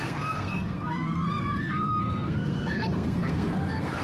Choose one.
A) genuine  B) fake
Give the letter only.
B